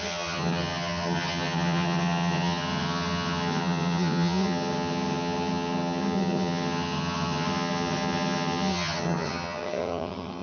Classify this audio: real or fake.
fake